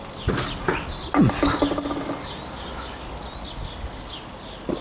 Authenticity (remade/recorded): recorded